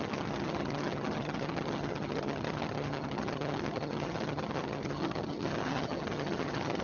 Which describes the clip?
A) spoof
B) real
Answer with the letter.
A